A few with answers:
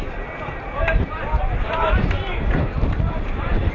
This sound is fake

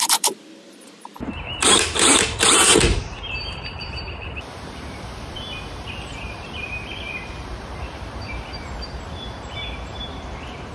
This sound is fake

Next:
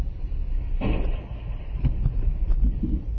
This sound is fake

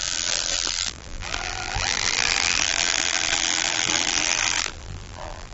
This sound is fake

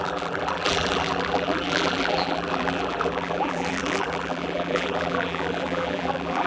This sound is fake